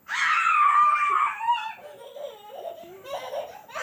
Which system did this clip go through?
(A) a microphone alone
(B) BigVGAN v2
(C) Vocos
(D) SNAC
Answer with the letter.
A